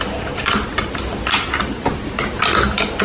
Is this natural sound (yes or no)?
yes